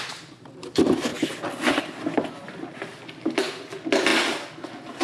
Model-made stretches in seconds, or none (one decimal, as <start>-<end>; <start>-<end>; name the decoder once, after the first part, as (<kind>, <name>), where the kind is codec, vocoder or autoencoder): none